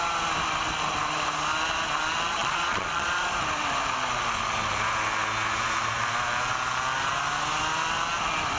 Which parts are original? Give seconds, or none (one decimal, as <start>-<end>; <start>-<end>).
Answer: 0.0-2.4; 3.3-8.6